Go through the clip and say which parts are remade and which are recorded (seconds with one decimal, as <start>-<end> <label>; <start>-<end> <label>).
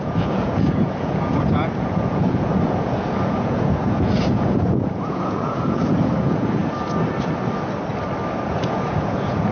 0.0-6.6 remade; 6.6-8.4 recorded; 8.4-9.5 remade